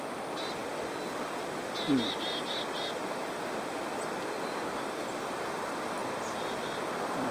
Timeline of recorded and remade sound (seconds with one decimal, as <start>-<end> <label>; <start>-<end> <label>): 0.0-0.6 remade; 0.6-5.0 recorded; 5.0-7.3 remade